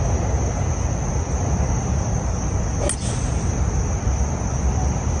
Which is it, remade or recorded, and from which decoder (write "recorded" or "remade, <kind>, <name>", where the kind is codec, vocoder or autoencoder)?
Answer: recorded